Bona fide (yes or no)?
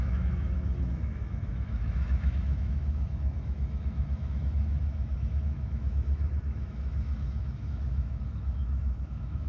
no